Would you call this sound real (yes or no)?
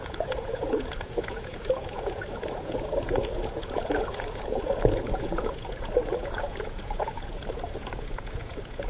no